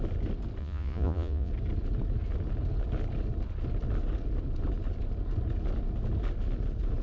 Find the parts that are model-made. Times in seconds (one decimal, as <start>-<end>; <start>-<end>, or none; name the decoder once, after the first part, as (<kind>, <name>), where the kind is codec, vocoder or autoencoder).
0.6-1.5 (vocoder, Vocos)